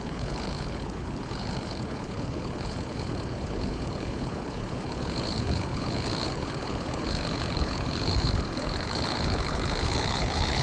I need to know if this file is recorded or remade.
remade